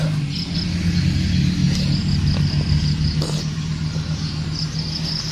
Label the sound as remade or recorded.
recorded